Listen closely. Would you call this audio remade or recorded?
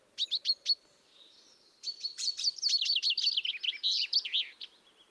recorded